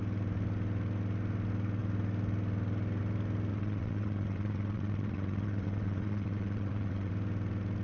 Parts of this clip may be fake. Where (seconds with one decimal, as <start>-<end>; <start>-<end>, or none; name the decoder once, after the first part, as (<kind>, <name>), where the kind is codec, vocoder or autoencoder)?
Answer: 3.5-7.1 (vocoder, WaveNeXt)